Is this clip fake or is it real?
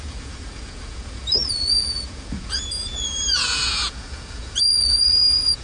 fake